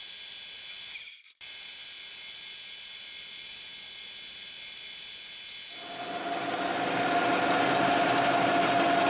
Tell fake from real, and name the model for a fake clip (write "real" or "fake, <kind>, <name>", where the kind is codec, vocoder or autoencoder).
real